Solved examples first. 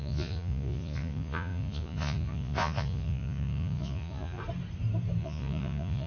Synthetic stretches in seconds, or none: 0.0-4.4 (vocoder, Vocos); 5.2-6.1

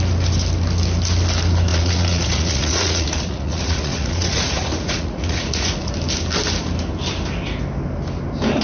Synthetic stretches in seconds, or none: 1.7-5.9 (vocoder, Vocos)

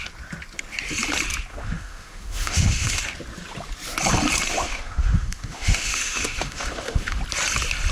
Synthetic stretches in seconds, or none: 1.5-3.0 (autoencoder, DAC-VAE); 4.5-7.2